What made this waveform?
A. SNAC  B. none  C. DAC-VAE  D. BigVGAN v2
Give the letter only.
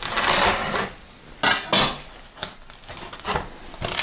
B